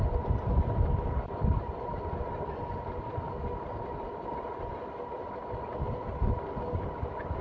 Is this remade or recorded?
recorded